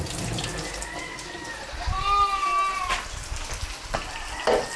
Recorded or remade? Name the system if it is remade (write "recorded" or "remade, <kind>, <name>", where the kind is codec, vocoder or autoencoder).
recorded